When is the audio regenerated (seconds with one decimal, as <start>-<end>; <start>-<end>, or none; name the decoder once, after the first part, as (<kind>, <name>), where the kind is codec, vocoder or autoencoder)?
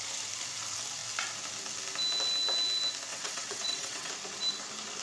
3.1-4.1 (vocoder, WaveNeXt)